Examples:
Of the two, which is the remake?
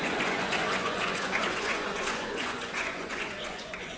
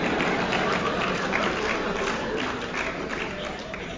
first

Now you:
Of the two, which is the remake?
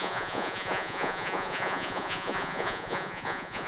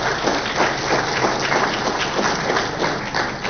first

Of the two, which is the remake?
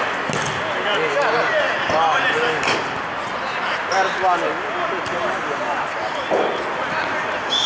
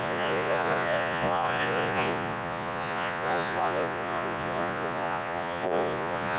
second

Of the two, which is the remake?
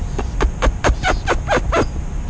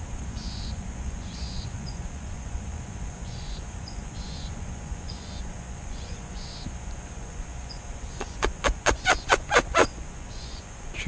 second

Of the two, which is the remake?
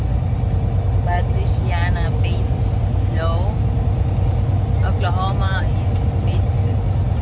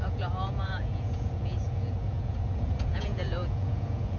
second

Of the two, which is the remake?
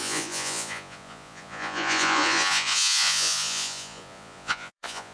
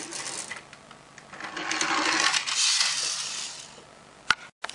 first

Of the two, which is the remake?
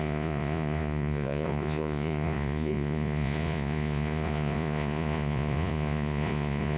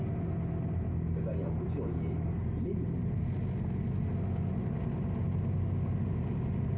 first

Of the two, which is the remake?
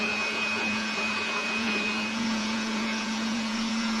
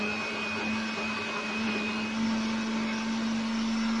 first